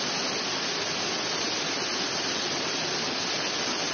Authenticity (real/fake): real